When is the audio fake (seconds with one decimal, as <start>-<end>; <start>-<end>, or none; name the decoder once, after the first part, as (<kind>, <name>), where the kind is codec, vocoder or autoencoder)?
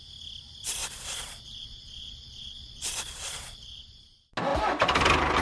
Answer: 0.8-4.0 (vocoder, Vocos)